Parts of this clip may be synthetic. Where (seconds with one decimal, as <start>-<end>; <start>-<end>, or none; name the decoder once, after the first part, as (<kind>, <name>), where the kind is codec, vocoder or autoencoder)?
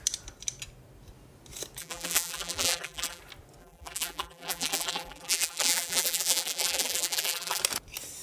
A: 1.8-3.2 (vocoder, BigVGAN v2); 3.6-7.6